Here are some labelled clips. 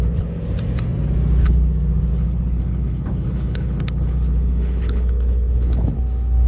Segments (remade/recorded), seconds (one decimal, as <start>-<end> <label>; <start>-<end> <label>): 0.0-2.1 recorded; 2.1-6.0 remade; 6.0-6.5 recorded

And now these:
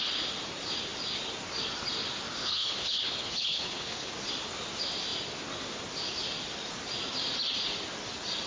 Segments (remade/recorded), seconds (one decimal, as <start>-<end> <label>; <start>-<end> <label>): 0.0-2.4 recorded; 2.4-4.1 remade; 4.1-8.5 recorded

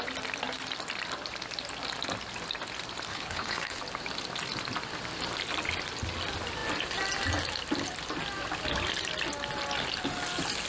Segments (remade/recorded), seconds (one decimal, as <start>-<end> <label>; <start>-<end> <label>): 0.0-3.1 recorded; 3.1-3.8 remade; 3.8-10.7 recorded

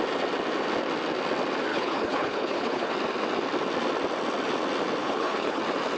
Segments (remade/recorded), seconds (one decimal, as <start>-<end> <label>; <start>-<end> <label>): 0.0-1.7 recorded; 1.7-2.9 remade; 2.9-5.0 recorded; 5.0-5.6 remade; 5.6-6.0 recorded

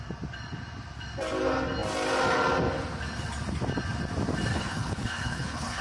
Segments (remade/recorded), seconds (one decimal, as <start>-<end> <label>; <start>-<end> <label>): 0.0-4.5 recorded; 4.5-5.8 remade

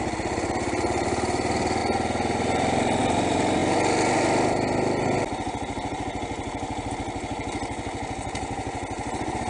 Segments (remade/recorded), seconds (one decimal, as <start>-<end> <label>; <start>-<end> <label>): 0.0-9.5 recorded

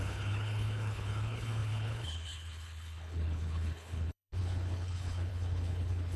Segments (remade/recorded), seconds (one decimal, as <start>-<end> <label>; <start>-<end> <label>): 0.0-6.2 remade